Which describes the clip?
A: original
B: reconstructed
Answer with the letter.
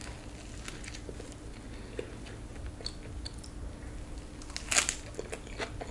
A